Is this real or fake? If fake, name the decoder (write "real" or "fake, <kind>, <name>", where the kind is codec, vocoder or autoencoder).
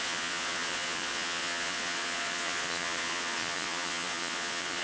fake, vocoder, Vocos